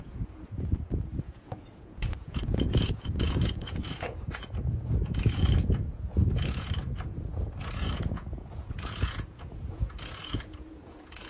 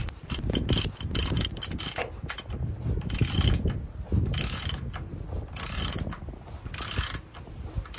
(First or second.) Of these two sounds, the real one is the second